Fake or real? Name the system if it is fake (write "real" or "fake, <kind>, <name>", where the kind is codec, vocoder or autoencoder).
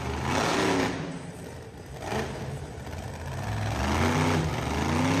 real